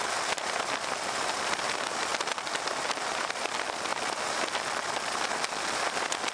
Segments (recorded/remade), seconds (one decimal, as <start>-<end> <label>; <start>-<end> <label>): 0.0-6.3 recorded